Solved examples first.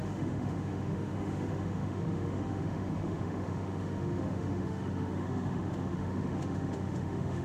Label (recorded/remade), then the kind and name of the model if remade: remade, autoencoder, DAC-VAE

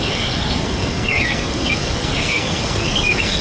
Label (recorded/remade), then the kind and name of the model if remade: remade, codec, SNAC